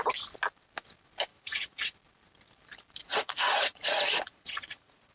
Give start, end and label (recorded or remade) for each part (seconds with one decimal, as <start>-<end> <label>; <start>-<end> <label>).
0.0-1.3 recorded; 1.3-1.9 remade; 1.9-3.1 recorded; 3.1-5.1 remade